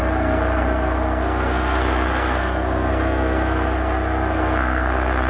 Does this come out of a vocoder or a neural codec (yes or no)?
yes